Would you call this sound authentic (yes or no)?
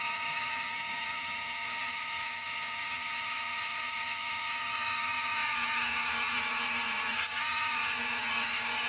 no